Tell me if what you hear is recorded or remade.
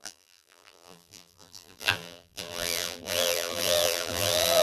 remade